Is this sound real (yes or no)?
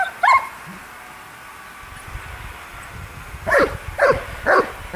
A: yes